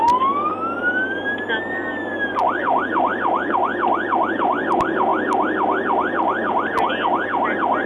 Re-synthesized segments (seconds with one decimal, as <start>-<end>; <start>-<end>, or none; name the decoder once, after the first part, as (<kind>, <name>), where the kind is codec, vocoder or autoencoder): 2.4-3.0 (vocoder, BigVGAN v2)